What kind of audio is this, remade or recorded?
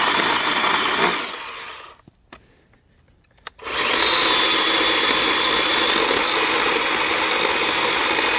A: recorded